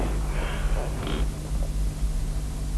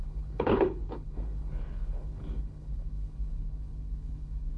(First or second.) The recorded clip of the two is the first